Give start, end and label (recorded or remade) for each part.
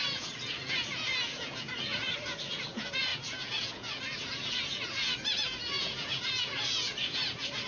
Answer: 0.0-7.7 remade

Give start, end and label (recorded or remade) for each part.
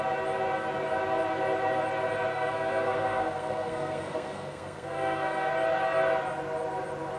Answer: 0.0-2.3 recorded; 2.3-5.5 remade; 5.5-7.2 recorded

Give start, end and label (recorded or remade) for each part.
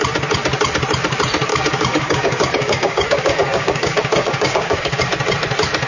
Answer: 0.0-1.5 recorded; 1.5-5.0 remade; 5.0-5.9 recorded